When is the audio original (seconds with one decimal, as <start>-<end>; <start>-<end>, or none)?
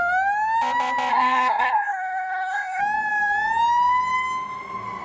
0.0-1.1; 2.8-5.0